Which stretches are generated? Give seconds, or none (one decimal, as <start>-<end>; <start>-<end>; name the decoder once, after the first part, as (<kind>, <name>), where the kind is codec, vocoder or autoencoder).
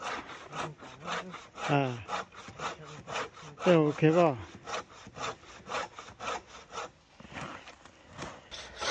none